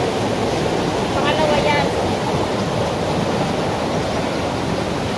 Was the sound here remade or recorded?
recorded